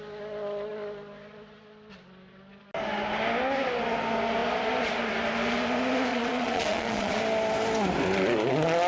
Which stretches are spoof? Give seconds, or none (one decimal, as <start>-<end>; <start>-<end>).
6.1-7.2

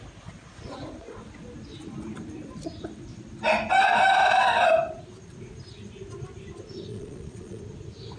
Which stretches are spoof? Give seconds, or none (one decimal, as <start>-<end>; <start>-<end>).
6.9-7.6